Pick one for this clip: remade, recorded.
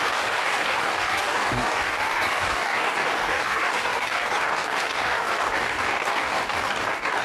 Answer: remade